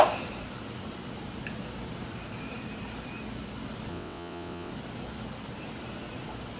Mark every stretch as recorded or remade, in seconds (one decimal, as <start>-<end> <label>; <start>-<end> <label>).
0.0-3.9 recorded; 3.9-4.7 remade; 4.7-6.6 recorded